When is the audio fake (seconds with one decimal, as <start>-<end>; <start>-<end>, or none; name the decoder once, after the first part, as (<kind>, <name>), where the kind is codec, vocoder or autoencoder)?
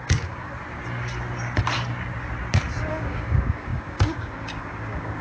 0.0-0.5 (codec, DAC); 2.9-5.2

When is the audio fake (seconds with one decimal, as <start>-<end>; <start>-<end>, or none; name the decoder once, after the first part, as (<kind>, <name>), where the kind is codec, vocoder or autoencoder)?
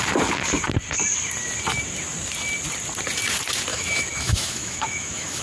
3.7-5.4 (autoencoder, DAC-VAE)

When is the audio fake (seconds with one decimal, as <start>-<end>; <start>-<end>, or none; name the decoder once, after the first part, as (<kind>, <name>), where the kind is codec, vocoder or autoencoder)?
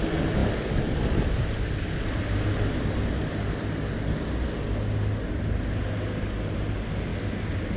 none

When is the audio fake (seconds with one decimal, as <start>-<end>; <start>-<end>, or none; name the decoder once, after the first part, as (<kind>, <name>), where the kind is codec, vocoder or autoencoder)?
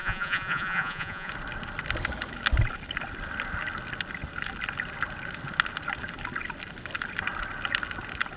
0.0-1.3 (vocoder, Vocos)